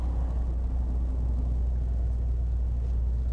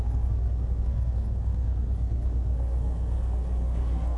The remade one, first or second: second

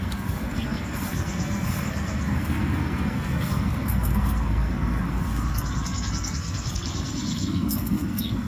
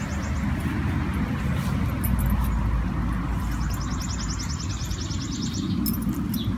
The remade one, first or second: first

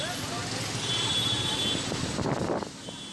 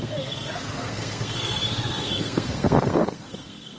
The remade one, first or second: second